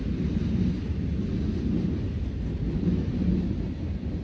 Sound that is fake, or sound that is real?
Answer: real